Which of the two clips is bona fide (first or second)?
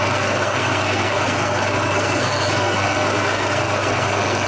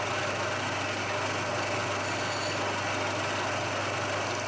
second